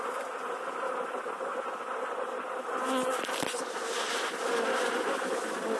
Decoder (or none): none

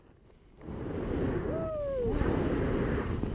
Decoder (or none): none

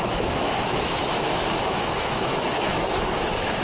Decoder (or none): autoencoder, DAC-VAE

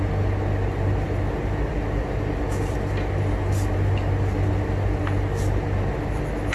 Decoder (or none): none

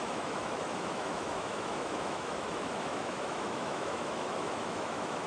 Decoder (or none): autoencoder, DAC-VAE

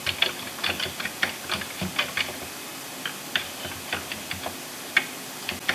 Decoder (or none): none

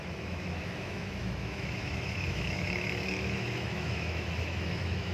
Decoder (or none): autoencoder, DAC-VAE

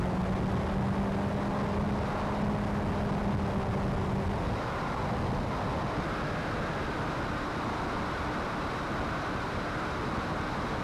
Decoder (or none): none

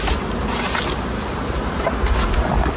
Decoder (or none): none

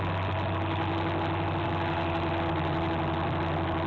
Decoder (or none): none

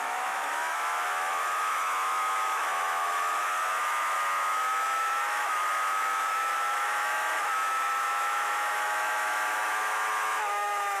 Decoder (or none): autoencoder, DAC-VAE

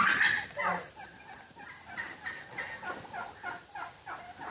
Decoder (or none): none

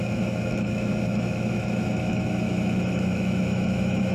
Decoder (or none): autoencoder, DAC-VAE